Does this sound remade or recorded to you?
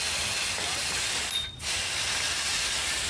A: recorded